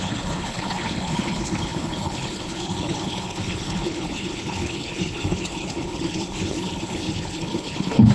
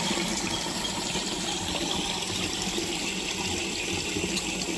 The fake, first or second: first